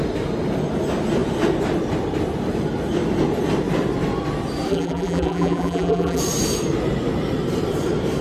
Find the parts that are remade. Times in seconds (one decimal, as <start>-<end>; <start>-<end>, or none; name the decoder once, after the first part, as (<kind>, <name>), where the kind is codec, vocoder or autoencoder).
4.7-6.2 (vocoder, BigVGAN v2)